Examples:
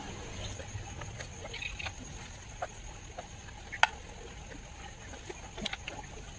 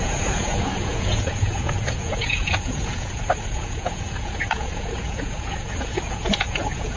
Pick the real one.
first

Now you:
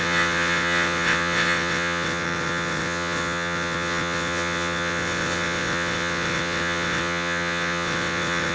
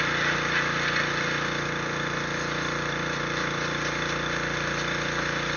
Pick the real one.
second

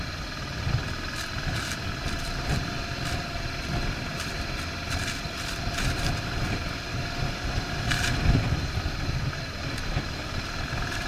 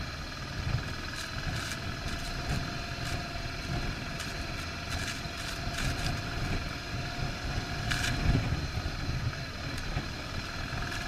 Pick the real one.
second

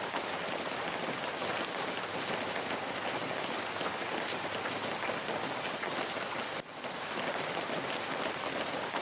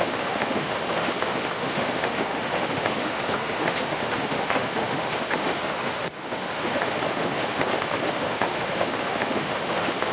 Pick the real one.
first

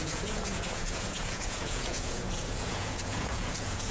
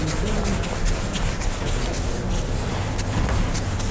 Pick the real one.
second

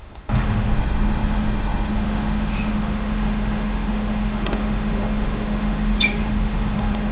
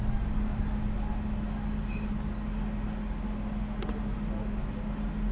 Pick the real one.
second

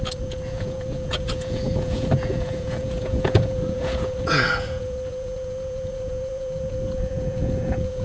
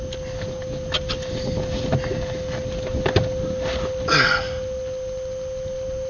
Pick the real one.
second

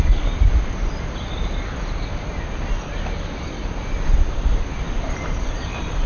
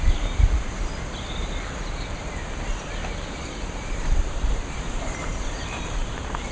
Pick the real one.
first